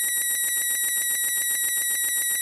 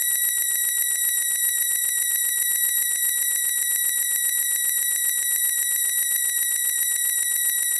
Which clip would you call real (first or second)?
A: first